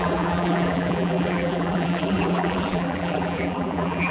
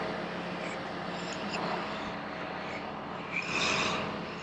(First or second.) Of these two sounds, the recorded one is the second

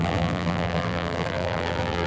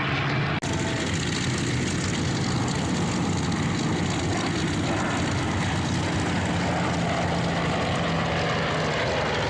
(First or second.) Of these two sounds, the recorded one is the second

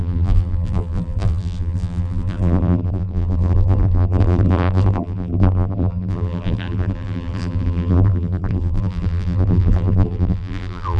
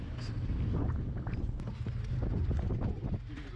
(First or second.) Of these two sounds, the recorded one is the second